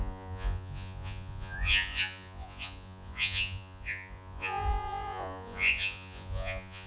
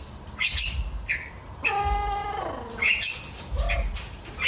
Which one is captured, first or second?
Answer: second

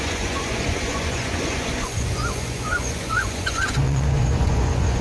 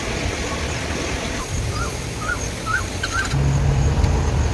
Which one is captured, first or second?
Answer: second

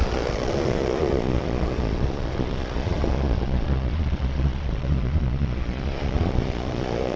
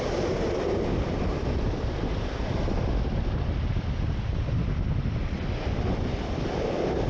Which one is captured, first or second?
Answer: second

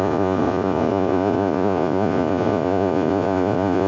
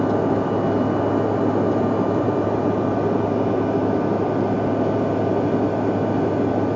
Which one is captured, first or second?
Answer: second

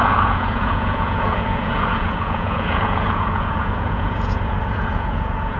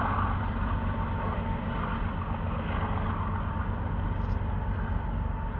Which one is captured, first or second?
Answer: second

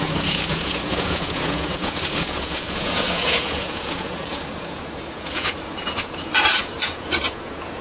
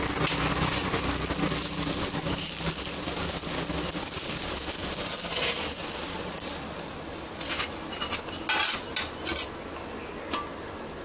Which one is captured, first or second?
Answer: second